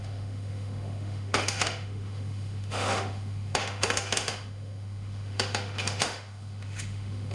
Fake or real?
fake